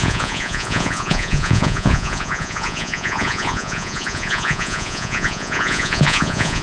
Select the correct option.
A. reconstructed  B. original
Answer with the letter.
A